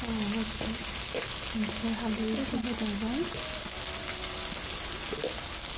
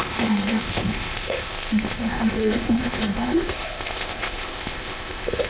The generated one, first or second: second